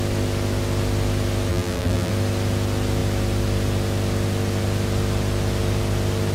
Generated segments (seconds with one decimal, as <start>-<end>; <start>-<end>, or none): 1.5-2.1